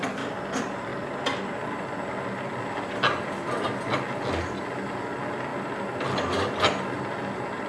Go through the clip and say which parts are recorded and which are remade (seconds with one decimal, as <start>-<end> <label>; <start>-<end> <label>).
0.0-7.7 recorded